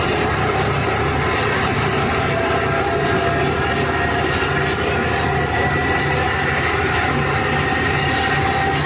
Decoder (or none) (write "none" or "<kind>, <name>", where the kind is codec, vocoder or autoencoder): none